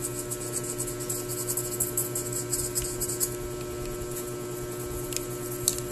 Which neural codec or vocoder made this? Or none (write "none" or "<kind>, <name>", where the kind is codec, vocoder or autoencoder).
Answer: none